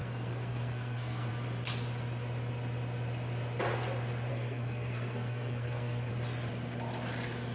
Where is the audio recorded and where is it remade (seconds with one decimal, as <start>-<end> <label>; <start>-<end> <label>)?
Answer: 0.0-1.3 remade; 1.3-4.3 recorded; 4.3-6.1 remade; 6.1-7.5 recorded

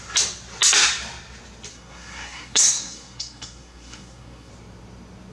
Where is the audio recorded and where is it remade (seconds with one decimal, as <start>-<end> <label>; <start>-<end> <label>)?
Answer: 0.0-1.7 recorded; 1.7-4.5 remade; 4.5-5.3 recorded

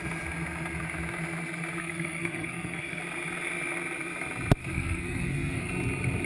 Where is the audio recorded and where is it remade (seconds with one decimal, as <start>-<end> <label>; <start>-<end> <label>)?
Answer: 0.0-1.8 recorded; 1.8-3.0 remade; 3.0-4.6 recorded; 4.6-5.7 remade; 5.7-6.3 recorded

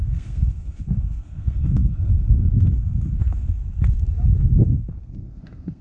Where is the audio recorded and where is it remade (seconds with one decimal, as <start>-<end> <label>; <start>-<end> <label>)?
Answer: 0.0-3.6 remade; 3.6-4.4 recorded; 4.4-5.8 remade

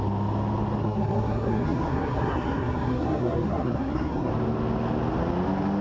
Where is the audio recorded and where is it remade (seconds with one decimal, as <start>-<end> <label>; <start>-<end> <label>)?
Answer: 0.0-0.8 recorded; 0.8-4.3 remade; 4.3-5.8 recorded

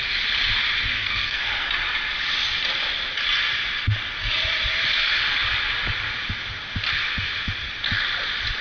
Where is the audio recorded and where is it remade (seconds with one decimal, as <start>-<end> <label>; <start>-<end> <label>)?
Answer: 0.0-0.9 recorded; 0.9-1.7 remade; 1.7-8.6 recorded